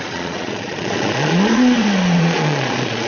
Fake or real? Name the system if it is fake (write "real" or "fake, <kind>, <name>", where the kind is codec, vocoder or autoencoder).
fake, vocoder, Vocos